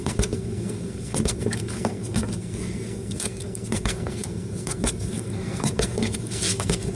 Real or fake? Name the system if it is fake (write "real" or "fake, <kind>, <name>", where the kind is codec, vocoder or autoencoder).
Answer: fake, codec, SNAC